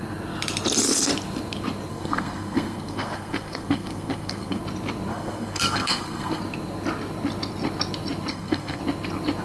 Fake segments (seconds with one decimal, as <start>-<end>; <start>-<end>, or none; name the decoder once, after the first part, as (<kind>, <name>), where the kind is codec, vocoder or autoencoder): 1.9-4.6 (codec, SNAC); 5.1-6.4; 8.3-8.8